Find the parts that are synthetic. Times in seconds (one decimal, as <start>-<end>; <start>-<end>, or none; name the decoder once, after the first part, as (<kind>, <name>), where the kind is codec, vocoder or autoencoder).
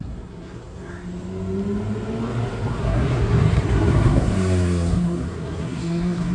0.0-0.9 (codec, SNAC); 2.8-6.3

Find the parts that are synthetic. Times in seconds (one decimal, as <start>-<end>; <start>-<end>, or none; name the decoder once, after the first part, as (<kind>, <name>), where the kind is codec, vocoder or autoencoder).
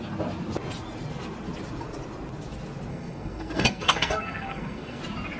2.9-5.0 (codec, SNAC)